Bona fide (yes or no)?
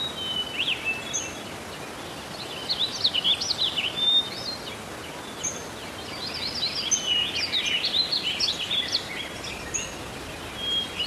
yes